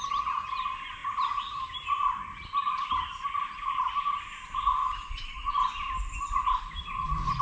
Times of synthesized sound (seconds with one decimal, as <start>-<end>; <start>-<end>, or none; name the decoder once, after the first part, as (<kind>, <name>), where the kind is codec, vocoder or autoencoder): 4.8-5.5 (autoencoder, DAC-VAE)